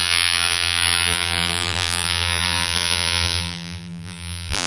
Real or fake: fake